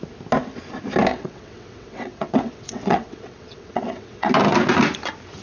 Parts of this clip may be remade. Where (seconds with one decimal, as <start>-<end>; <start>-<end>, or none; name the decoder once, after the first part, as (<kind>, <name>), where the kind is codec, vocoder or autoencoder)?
1.1-4.3 (vocoder, WaveNeXt)